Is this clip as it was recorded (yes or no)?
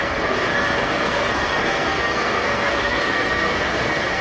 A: no